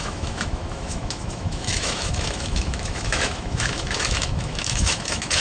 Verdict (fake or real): fake